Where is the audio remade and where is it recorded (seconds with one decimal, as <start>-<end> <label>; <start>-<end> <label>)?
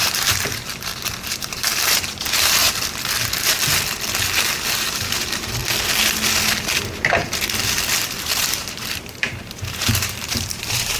0.0-0.9 remade; 0.9-1.4 recorded; 1.4-2.6 remade; 2.6-4.7 recorded; 4.7-5.6 remade; 5.6-8.2 recorded; 8.2-11.0 remade